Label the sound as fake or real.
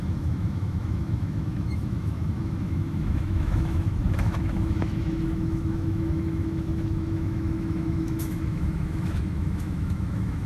fake